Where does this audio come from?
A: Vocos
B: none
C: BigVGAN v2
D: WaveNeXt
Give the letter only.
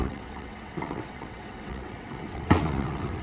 D